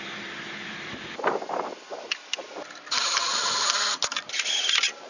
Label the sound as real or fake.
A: real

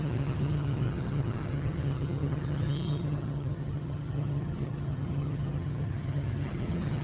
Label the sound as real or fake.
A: fake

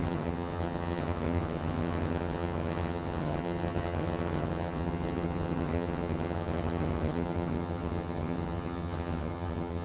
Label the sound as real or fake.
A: fake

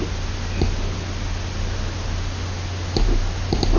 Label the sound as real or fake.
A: real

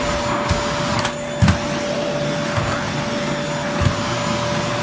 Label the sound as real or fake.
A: real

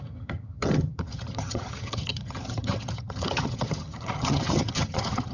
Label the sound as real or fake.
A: fake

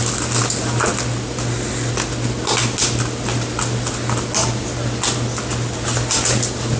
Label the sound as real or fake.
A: real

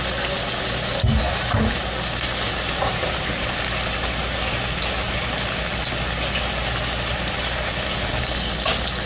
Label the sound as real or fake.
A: real